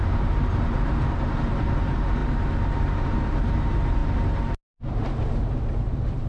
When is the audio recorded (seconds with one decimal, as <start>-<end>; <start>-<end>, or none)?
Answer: 2.2-2.7; 4.0-5.3

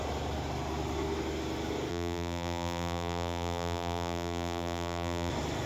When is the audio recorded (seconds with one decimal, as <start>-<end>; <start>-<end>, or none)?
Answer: 0.0-1.9; 5.3-5.7